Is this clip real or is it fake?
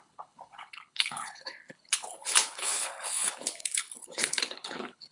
fake